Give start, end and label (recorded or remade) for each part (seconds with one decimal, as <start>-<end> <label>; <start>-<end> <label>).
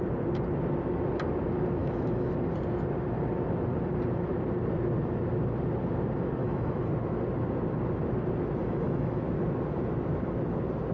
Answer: 0.0-1.8 recorded; 1.8-2.3 remade; 2.3-6.4 recorded; 6.4-6.9 remade; 6.9-8.6 recorded; 8.6-9.2 remade; 9.2-10.9 recorded